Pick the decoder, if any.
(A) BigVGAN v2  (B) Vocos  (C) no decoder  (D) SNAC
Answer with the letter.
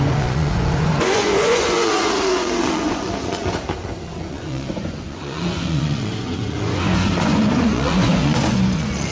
B